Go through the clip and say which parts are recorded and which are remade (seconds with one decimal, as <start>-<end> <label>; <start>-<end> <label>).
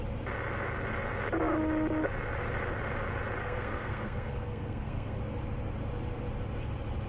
0.0-3.4 recorded; 3.4-5.2 remade; 5.2-7.1 recorded